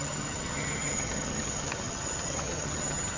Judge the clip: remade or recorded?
remade